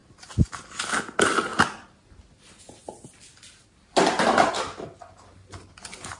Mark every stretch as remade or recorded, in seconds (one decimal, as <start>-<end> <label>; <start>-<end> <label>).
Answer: 0.0-6.2 recorded